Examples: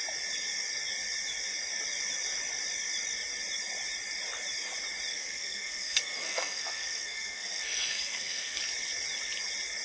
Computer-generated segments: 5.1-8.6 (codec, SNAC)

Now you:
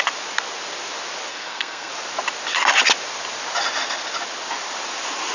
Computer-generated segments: 1.3-1.9 (codec, SNAC)

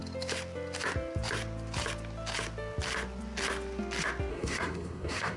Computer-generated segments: 4.3-5.4 (codec, SNAC)

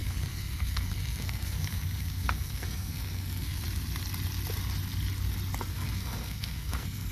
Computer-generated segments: 0.0-3.6 (codec, SNAC); 5.7-7.1

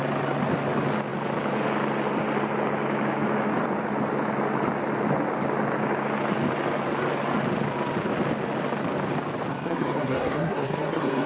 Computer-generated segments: 9.5-11.3 (codec, SNAC)

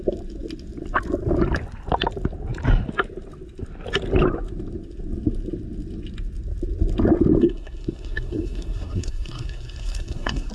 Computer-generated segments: 7.4-10.5 (codec, SNAC)

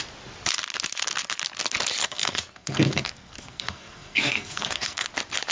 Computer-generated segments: 2.0-5.1 (codec, SNAC)